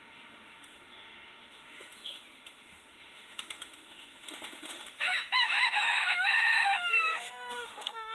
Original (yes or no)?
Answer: no